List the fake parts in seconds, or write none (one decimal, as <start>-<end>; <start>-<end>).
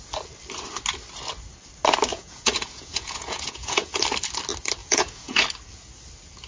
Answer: 2.1-4.0; 4.8-5.4